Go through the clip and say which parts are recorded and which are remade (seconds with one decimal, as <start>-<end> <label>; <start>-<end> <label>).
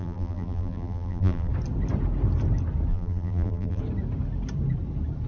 0.0-1.5 remade; 1.5-2.9 recorded; 2.9-3.8 remade; 3.8-5.3 recorded